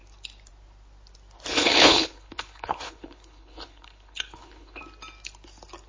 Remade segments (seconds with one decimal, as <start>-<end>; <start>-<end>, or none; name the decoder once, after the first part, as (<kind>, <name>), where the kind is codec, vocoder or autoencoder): 1.5-4.8 (codec, HILCodec)